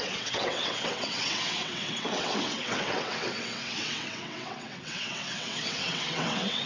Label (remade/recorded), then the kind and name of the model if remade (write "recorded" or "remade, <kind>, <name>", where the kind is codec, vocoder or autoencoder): remade, vocoder, WaveNeXt